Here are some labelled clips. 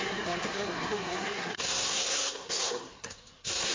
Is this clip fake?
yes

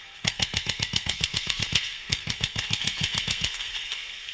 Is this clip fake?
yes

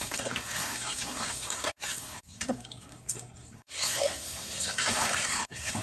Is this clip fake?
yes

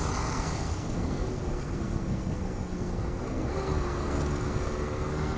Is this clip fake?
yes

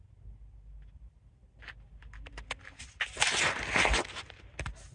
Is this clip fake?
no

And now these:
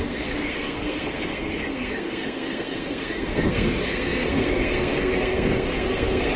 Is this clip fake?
yes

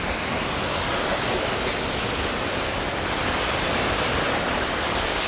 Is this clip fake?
no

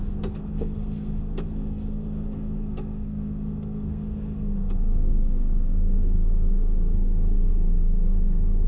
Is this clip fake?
yes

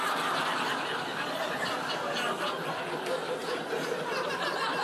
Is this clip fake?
no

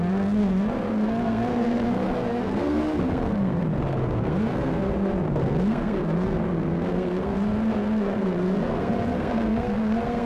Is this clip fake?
yes